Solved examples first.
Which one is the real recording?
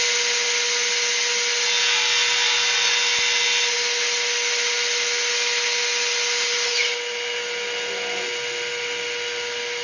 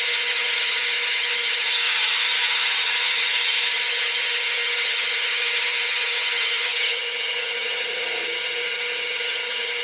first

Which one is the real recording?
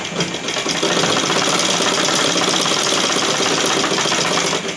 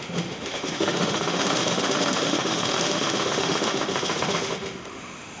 first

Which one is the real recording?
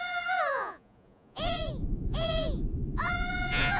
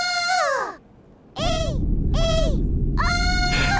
second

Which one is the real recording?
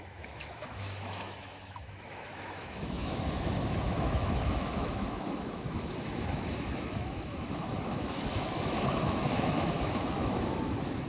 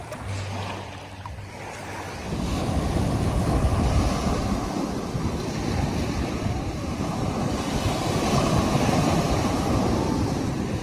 second